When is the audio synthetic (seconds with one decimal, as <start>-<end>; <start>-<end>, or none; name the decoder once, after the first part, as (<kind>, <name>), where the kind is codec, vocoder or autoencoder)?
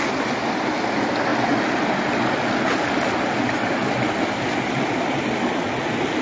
none